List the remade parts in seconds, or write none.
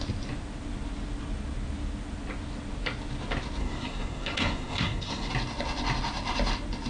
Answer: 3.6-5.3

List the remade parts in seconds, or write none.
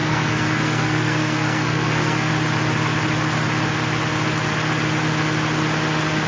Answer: 0.0-2.3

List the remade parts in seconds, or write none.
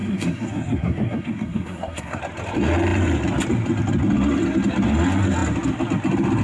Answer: 0.0-2.2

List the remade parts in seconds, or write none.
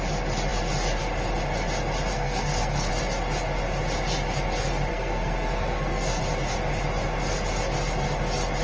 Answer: 2.1-2.9; 4.9-6.2